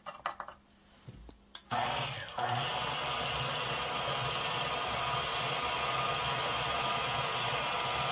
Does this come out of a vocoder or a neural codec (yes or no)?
no